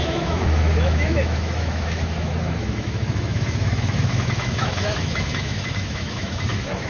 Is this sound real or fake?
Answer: fake